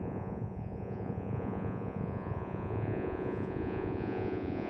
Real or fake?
fake